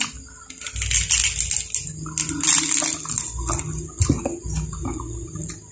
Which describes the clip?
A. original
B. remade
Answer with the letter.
A